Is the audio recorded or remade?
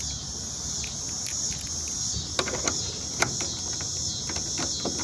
recorded